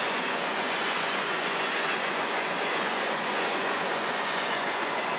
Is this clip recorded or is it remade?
remade